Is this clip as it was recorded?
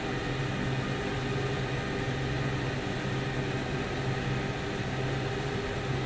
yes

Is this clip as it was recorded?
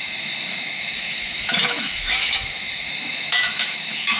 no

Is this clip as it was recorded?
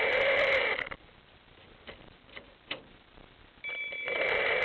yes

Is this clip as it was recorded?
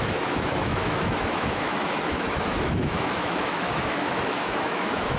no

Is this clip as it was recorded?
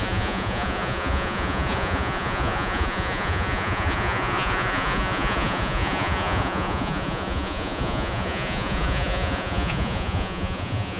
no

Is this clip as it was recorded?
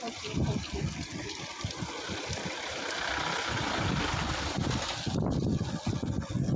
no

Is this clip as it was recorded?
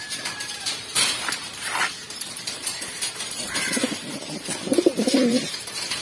no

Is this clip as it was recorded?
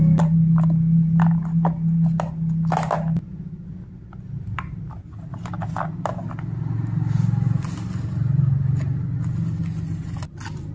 yes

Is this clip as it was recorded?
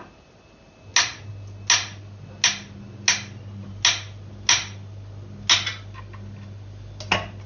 yes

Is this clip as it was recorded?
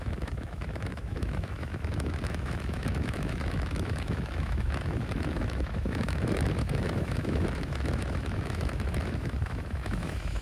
no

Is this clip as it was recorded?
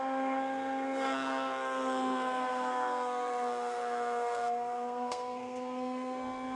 no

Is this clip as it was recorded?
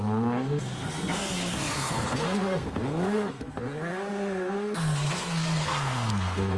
no